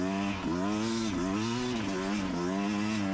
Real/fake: real